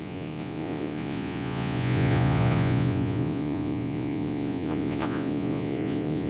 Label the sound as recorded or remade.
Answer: remade